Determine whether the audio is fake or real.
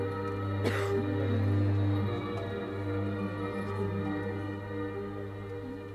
real